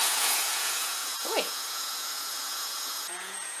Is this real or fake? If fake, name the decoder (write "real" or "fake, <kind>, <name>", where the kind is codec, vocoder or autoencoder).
fake, vocoder, Vocos